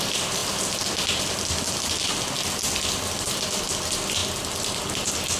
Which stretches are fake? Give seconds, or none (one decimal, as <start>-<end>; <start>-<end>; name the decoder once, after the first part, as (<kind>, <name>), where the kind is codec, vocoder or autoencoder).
none